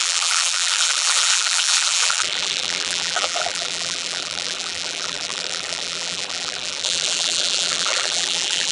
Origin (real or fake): fake